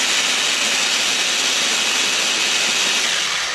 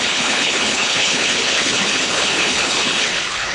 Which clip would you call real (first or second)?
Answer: first